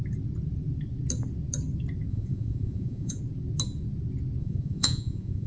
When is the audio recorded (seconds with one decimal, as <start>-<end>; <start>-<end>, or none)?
0.0-2.1; 3.2-4.4